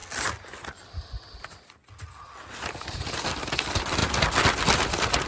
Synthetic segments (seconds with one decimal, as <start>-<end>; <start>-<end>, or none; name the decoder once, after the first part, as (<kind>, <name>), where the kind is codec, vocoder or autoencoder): none